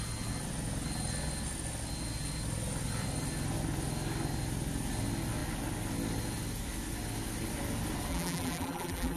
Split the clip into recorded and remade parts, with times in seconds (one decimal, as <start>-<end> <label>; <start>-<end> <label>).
0.0-8.1 recorded; 8.1-9.2 remade